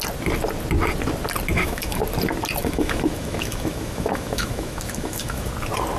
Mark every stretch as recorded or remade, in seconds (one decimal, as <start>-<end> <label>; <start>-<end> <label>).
0.0-1.5 recorded; 1.5-2.0 remade; 2.0-2.6 recorded; 2.6-5.5 remade; 5.5-6.0 recorded